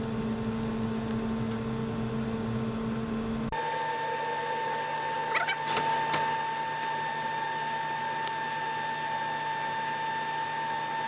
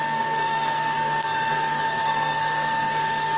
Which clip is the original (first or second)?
first